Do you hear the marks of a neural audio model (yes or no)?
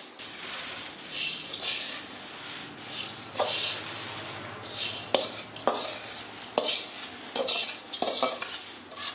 no